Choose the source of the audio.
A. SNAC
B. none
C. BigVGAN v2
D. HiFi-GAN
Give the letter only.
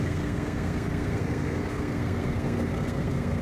A